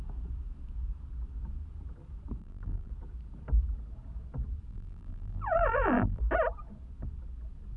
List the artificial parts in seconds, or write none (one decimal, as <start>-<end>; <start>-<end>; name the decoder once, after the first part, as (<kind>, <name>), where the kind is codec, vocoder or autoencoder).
2.4-2.9 (vocoder, BigVGAN v2); 4.7-6.2